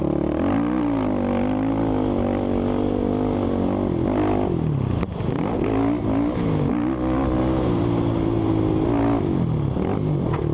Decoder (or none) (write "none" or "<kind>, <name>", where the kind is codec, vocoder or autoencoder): none